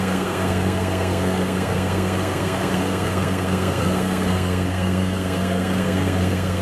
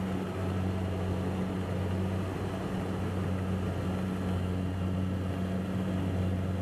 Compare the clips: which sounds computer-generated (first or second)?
first